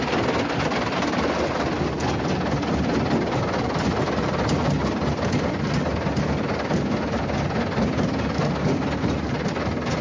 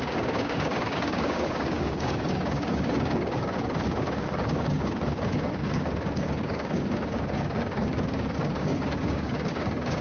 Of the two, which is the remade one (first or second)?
second